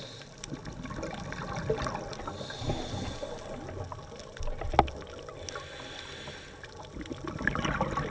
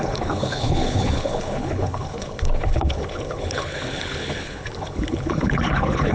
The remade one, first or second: second